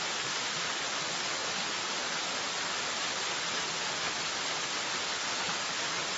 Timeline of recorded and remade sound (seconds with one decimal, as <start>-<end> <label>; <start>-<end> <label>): 0.0-6.2 recorded